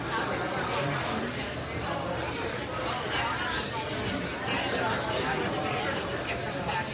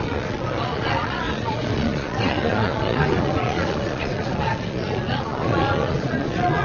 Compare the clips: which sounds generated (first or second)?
second